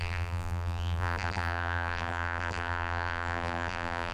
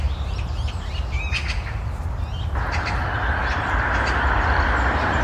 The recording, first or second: second